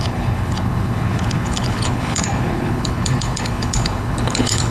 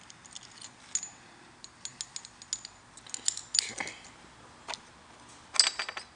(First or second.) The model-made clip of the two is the first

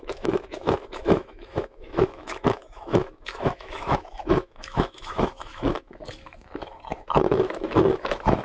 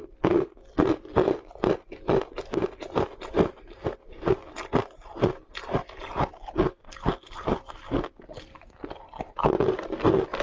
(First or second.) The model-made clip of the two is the first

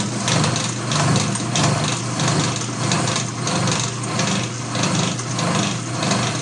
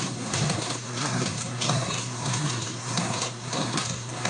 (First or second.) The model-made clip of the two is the second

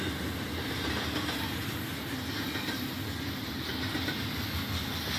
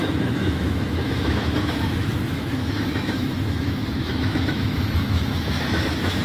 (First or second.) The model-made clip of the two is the second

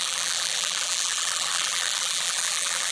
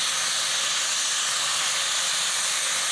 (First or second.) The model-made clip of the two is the first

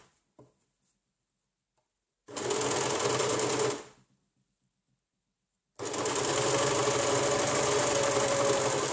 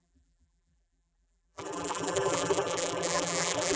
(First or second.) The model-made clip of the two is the second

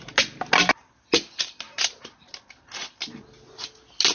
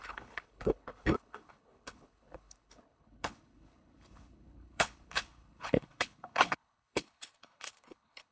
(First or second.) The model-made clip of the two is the second